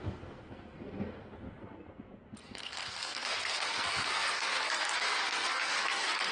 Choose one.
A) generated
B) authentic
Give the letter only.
A